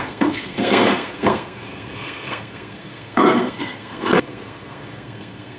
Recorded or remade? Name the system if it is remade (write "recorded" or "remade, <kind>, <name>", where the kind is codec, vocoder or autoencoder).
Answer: remade, codec, SNAC